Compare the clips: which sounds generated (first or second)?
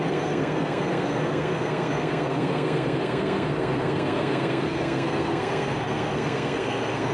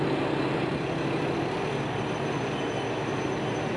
first